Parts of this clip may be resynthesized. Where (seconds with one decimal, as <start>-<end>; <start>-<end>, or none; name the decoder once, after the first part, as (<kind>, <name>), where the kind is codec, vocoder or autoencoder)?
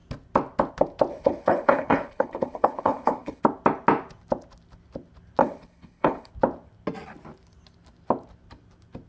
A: 1.1-3.4 (codec, HILCodec); 5.4-6.3